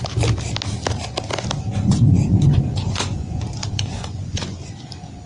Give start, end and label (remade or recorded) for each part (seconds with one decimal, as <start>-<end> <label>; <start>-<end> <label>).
0.0-1.7 recorded; 1.7-4.7 remade; 4.7-5.3 recorded